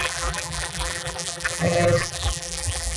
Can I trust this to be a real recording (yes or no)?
no